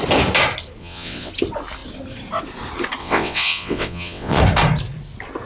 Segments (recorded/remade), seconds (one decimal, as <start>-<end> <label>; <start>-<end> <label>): 0.0-0.8 recorded; 0.8-1.3 remade; 1.3-3.0 recorded; 3.0-4.4 remade; 4.4-5.5 recorded